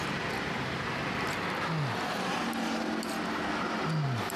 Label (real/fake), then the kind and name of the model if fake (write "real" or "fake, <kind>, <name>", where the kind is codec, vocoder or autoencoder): real